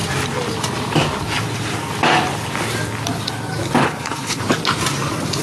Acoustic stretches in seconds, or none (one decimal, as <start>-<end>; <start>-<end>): 0.0-3.8; 4.4-5.4